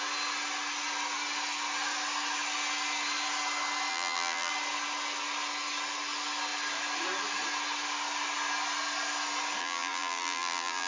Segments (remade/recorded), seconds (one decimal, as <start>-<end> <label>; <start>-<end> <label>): 0.0-3.9 recorded; 3.9-4.5 remade; 4.5-9.6 recorded; 9.6-10.9 remade